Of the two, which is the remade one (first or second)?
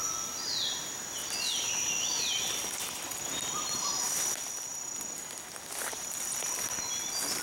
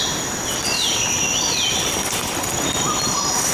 second